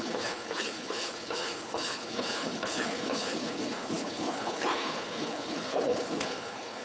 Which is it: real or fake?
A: fake